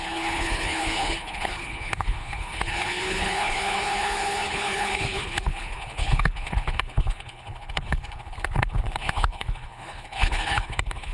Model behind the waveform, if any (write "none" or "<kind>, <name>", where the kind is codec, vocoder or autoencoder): codec, HILCodec